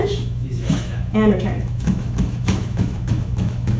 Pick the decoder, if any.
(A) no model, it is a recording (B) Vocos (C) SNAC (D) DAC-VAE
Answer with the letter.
D